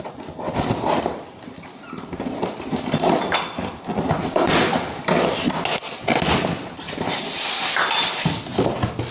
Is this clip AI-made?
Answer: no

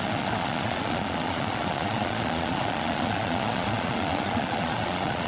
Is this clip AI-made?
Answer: yes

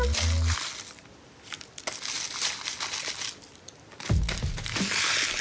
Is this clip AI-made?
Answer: no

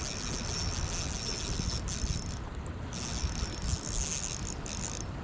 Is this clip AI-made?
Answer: no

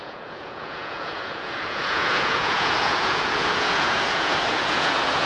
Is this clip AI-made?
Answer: yes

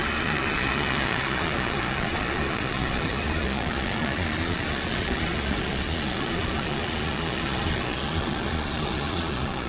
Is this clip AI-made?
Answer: yes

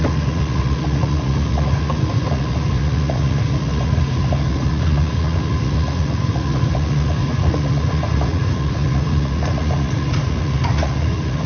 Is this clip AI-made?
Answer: yes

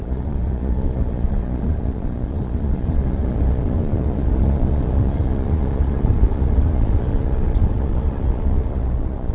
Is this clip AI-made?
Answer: yes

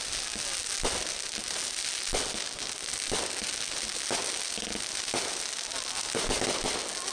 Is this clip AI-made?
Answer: no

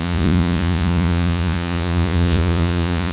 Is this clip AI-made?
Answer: yes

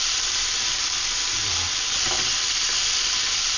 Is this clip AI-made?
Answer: no